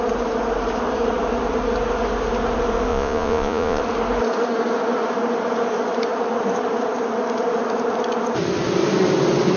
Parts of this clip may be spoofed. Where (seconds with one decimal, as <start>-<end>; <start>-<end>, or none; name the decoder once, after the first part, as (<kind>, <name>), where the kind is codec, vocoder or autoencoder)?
2.9-3.8 (vocoder, Vocos)